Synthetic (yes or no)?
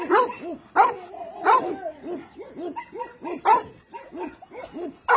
no